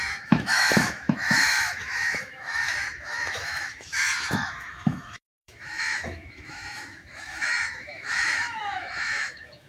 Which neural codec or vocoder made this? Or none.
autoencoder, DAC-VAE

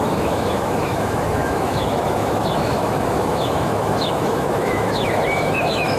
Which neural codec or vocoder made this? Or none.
autoencoder, DAC-VAE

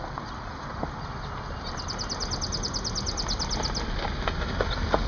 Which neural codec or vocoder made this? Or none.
none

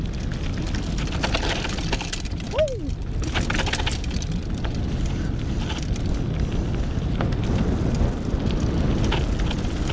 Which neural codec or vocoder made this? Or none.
none